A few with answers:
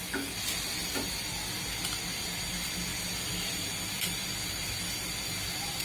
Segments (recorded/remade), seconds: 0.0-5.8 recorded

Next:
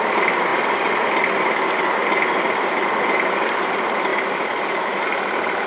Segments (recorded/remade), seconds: 0.0-5.7 recorded

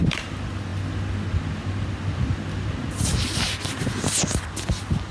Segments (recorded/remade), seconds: 0.0-5.1 recorded

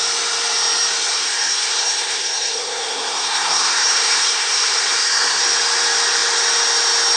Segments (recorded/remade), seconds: 0.0-1.1 recorded; 1.1-5.4 remade; 5.4-7.2 recorded

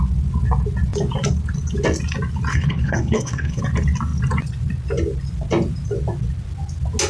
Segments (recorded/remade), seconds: 0.0-2.5 recorded; 2.5-3.6 remade; 3.6-7.1 recorded